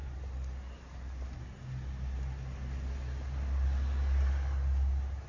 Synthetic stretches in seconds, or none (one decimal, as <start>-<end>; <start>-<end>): none

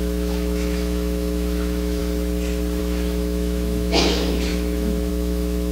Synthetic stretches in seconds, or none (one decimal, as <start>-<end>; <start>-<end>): 0.0-2.0; 2.8-5.7

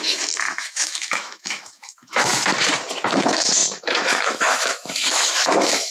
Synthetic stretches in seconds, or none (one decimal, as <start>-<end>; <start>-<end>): 0.0-2.3; 3.2-5.9

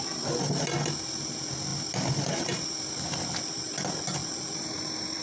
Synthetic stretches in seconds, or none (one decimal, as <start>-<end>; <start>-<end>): none

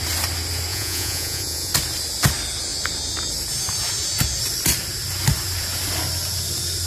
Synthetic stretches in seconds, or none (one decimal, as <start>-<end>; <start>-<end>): 0.7-1.7

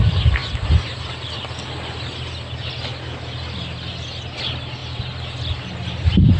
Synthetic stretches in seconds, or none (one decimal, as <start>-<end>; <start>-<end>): 4.8-5.7